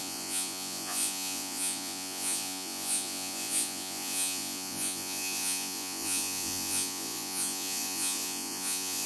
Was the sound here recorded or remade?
remade